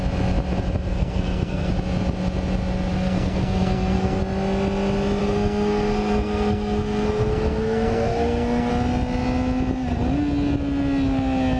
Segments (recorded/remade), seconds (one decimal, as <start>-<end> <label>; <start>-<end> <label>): 0.0-0.9 recorded; 0.9-1.7 remade; 1.7-2.9 recorded; 2.9-4.2 remade; 4.2-5.2 recorded; 5.2-8.7 remade; 8.7-11.6 recorded